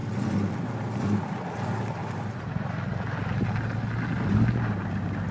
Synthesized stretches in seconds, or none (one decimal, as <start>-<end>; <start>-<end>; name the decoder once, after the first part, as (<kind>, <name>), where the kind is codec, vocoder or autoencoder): none

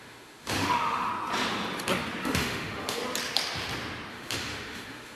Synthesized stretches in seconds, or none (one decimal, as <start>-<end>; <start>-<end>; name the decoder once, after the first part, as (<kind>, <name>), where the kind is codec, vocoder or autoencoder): 0.0-1.1 (autoencoder, DAC-VAE); 2.2-3.0; 4.1-5.2

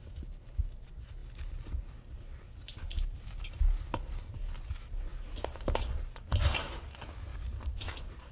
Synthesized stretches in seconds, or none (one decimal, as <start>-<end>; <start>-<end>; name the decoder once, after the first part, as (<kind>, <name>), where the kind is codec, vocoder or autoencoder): 7.3-8.3 (vocoder, BigVGAN v2)

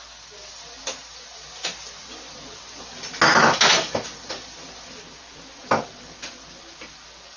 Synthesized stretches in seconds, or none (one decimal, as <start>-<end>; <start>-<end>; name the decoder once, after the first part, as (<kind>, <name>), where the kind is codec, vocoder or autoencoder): none

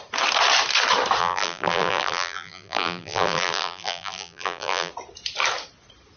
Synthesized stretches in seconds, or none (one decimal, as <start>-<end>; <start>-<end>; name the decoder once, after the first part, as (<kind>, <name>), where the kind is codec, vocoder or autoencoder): 1.2-4.9 (vocoder, BigVGAN v2)

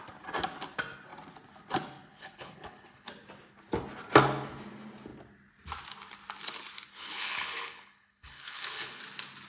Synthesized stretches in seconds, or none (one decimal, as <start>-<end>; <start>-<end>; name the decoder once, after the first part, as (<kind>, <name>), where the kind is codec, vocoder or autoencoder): 2.1-3.1 (codec, HILCodec); 6.9-9.0